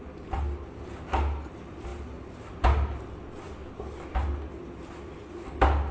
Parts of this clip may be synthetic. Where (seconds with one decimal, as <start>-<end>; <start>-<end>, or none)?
none